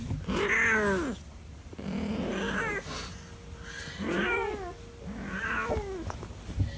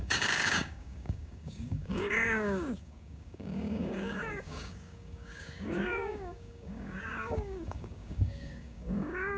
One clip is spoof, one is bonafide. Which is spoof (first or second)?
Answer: second